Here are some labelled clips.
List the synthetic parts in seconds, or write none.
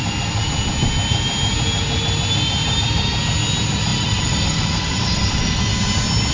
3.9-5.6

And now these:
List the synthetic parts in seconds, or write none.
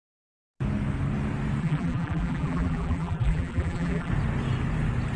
1.6-4.1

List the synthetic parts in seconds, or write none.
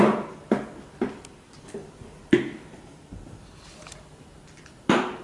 1.8-4.4